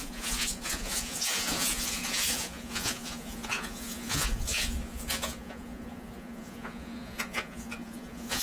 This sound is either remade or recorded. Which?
remade